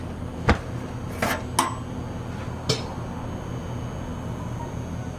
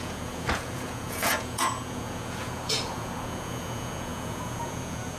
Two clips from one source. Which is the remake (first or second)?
second